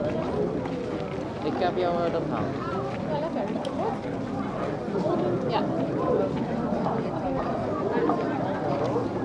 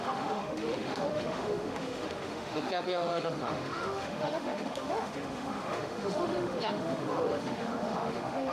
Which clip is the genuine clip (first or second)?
first